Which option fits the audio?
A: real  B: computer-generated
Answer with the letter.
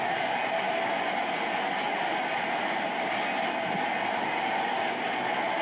A